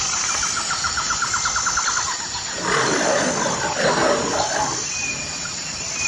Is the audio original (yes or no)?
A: yes